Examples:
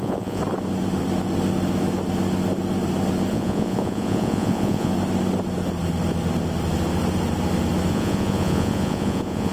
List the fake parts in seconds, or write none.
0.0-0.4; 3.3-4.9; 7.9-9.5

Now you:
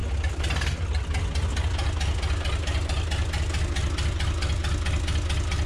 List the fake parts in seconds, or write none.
none